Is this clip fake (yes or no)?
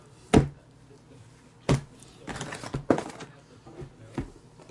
no